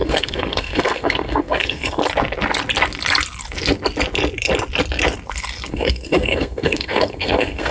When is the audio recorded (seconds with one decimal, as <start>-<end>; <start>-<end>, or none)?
2.0-5.7